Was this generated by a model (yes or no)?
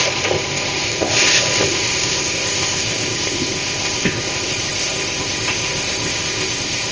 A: yes